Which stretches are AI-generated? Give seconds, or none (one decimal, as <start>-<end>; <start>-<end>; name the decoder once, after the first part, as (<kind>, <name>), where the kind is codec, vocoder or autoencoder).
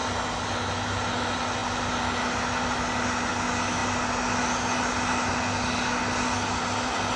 none